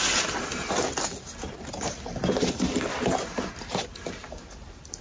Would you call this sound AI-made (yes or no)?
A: no